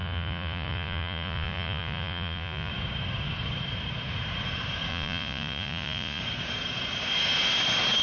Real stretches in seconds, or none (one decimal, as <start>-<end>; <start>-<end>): 2.7-4.9; 6.2-8.0